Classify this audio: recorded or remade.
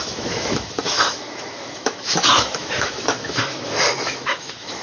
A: remade